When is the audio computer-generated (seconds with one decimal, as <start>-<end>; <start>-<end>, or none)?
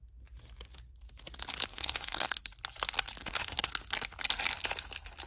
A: 1.7-2.4; 3.2-3.7